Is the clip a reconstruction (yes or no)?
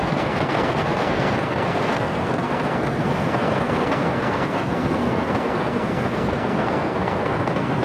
yes